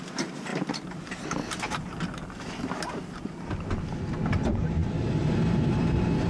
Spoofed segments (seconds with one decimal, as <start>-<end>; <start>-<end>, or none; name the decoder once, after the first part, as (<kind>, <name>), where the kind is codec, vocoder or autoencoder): 0.0-0.5 (vocoder, BigVGAN v2); 4.3-6.3